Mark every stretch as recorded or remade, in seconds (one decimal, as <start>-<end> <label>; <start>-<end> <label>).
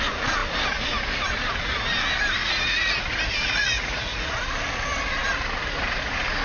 0.0-2.4 recorded; 2.4-3.0 remade; 3.0-3.4 recorded; 3.4-4.3 remade; 4.3-6.4 recorded